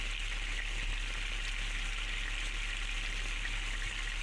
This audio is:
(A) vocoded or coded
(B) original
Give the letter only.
B